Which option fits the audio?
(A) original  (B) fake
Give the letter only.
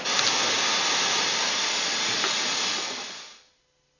A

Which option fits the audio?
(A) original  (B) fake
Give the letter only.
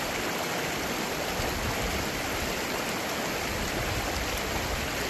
A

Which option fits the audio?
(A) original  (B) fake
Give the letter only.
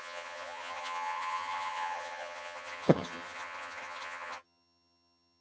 B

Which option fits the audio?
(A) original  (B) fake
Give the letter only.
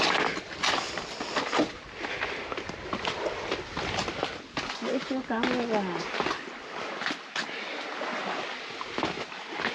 A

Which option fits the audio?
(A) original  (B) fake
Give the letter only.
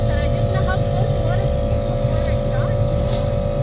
A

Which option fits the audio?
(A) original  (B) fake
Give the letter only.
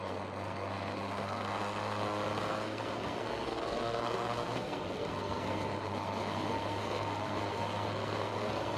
B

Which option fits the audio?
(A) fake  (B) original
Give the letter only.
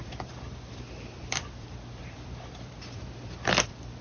A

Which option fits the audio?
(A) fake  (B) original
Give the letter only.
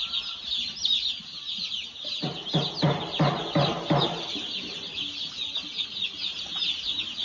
B